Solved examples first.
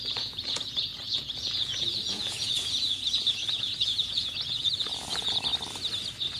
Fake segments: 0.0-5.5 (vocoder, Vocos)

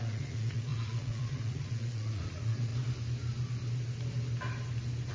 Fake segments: 0.0-2.7 (vocoder, Vocos)